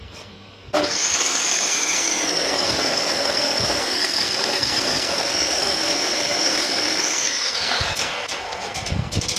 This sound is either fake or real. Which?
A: fake